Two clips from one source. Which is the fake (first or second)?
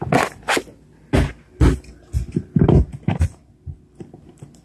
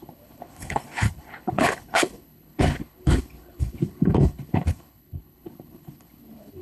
second